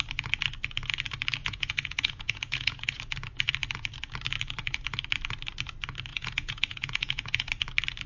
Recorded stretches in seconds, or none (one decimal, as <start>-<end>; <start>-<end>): 0.0-1.4; 3.0-6.1; 7.5-8.1